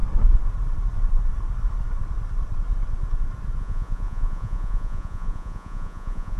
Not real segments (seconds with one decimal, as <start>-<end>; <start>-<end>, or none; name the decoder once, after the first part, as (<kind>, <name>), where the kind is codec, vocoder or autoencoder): 3.6-6.4 (vocoder, Vocos)